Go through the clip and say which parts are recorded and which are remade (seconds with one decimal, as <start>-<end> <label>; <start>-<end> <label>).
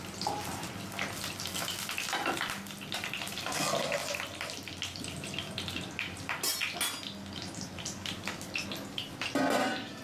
0.0-10.0 recorded